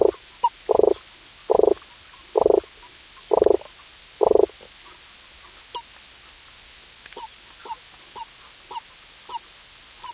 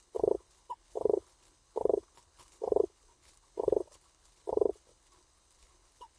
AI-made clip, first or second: second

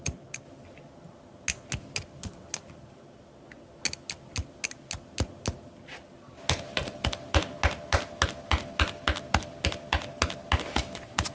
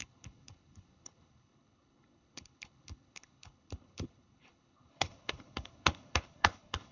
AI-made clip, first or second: second